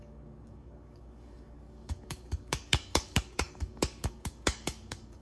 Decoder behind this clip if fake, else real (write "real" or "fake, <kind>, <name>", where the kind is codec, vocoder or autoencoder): fake, codec, DAC